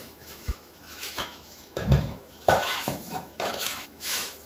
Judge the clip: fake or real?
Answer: fake